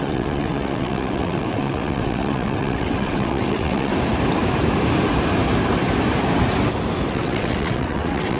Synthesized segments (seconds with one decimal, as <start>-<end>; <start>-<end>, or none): 0.0-3.9; 7.1-8.4